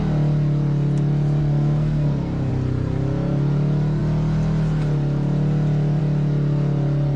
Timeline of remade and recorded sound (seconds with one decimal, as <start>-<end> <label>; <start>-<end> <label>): 0.0-1.4 recorded; 1.4-2.5 remade; 2.5-7.2 recorded